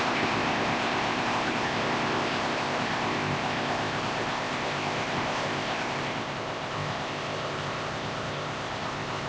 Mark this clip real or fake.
fake